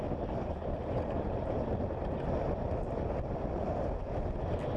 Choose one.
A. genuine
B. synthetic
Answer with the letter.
A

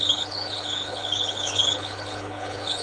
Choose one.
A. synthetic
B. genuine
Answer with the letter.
A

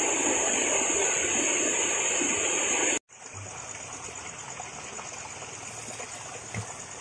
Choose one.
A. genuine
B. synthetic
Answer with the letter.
A